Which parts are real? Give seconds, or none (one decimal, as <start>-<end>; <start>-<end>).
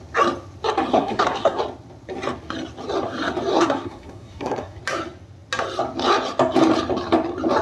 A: 0.0-0.9; 1.6-3.5; 4.8-7.6